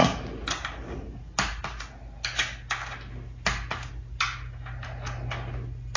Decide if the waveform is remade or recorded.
recorded